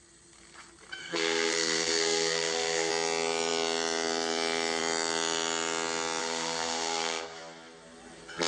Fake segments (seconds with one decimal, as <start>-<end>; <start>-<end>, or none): 1.0-2.9; 6.2-7.4